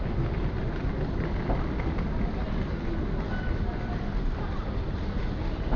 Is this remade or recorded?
recorded